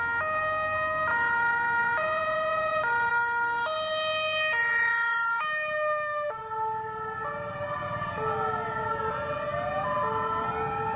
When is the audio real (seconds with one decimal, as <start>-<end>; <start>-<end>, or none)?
0.0-1.1; 3.1-4.6; 5.4-11.0